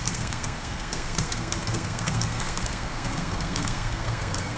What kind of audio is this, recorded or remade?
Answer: remade